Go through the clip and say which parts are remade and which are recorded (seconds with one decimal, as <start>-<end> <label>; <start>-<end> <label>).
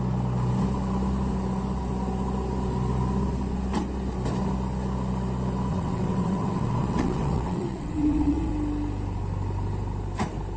0.0-5.7 recorded; 5.7-8.5 remade; 8.5-10.6 recorded